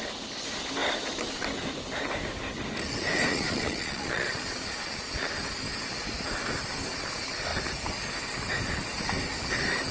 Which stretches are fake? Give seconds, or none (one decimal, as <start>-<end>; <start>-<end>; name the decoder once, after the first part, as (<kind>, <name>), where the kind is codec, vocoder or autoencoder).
3.3-5.3 (vocoder, Vocos)